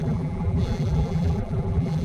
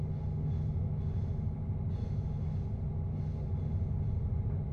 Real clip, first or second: second